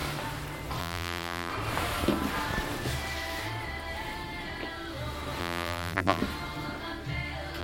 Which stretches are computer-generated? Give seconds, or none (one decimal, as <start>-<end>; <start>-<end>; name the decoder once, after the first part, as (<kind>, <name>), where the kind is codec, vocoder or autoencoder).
0.8-1.5 (vocoder, BigVGAN v2); 5.4-6.2